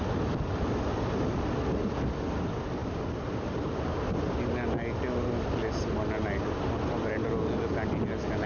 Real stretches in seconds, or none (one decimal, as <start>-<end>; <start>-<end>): 0.0-8.5